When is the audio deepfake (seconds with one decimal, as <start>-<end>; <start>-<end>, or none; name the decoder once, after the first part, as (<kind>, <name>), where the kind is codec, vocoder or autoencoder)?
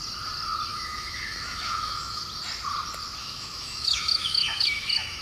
0.7-2.2 (autoencoder, DAC-VAE); 3.2-5.2